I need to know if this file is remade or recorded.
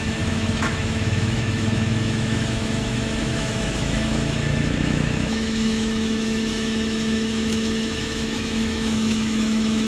remade